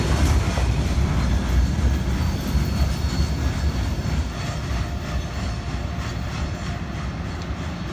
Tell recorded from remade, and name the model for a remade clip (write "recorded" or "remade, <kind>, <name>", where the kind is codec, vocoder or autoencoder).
recorded